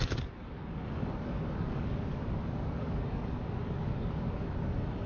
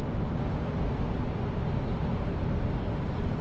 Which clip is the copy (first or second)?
first